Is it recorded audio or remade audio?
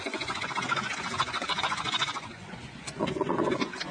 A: remade